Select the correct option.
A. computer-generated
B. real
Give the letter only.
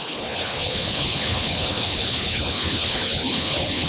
A